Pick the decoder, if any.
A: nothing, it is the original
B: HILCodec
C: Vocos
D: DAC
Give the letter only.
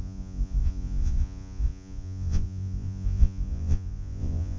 C